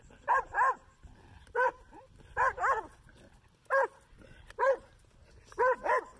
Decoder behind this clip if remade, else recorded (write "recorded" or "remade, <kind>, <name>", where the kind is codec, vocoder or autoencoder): recorded